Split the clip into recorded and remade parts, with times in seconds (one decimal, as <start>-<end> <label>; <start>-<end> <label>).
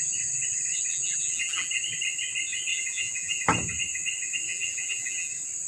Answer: 0.0-0.9 recorded; 0.9-1.8 remade; 1.8-2.7 recorded; 2.7-3.4 remade; 3.4-4.5 recorded; 4.5-5.3 remade; 5.3-5.7 recorded